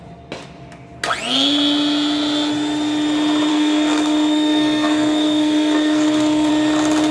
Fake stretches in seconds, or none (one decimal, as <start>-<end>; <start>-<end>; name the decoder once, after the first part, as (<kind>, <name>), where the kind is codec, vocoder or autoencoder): 3.5-6.5 (codec, SNAC)